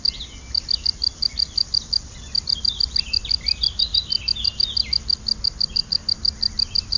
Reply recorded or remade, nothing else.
recorded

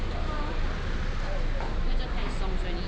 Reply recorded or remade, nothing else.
recorded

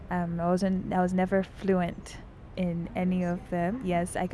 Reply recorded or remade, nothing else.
recorded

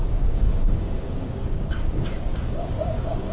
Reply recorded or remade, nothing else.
remade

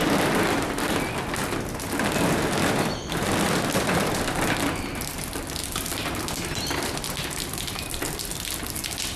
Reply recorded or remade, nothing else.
recorded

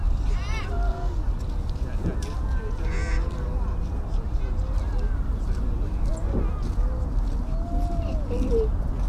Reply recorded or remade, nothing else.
recorded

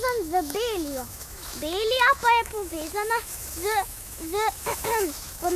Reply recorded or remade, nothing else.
remade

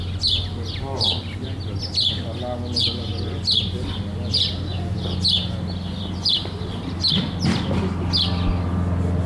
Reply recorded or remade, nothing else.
recorded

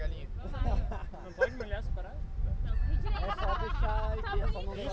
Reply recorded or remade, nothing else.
recorded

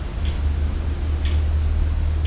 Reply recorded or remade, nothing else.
recorded